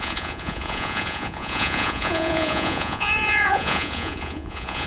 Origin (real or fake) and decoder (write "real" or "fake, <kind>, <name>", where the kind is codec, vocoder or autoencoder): fake, vocoder, Vocos